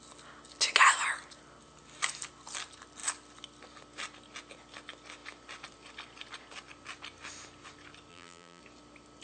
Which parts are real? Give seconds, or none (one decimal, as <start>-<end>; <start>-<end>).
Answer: 0.0-8.1; 8.6-9.2